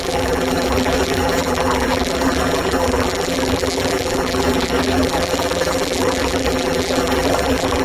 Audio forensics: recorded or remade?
remade